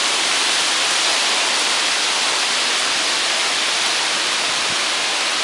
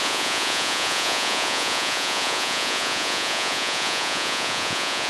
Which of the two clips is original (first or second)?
first